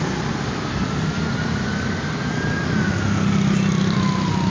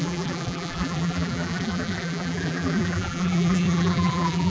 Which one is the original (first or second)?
first